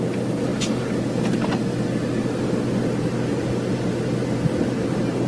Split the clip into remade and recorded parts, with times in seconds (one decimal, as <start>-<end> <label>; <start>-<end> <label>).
0.0-5.3 recorded